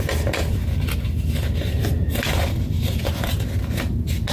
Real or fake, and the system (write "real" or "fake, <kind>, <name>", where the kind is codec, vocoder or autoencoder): real